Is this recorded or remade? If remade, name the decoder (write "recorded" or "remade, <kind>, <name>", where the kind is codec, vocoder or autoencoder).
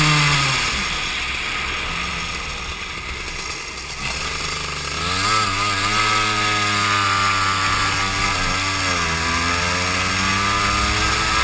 recorded